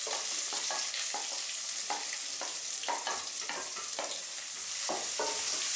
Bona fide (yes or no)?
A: yes